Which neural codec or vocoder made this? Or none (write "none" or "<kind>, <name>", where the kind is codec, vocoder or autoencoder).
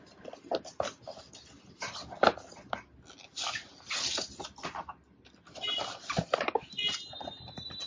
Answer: none